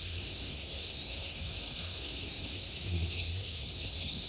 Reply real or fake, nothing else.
fake